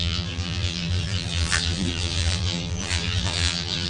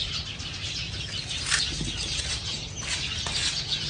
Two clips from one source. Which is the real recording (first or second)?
second